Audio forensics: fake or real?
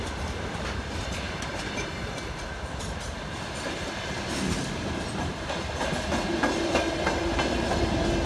real